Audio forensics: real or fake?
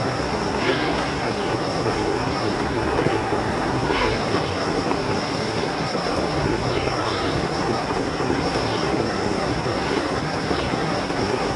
fake